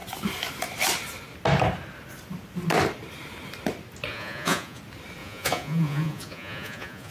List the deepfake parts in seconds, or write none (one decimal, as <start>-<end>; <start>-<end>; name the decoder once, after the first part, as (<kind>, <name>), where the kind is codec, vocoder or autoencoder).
4.1-4.8 (vocoder, Vocos); 5.2-7.1